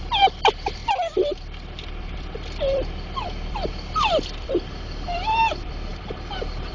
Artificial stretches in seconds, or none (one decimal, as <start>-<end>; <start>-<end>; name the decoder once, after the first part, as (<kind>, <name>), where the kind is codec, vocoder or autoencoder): 0.0-6.7 (vocoder, BigVGAN v2)